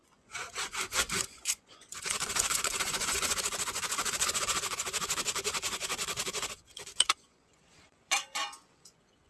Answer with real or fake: fake